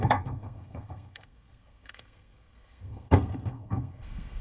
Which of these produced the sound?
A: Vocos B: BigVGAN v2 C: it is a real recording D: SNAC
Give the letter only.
D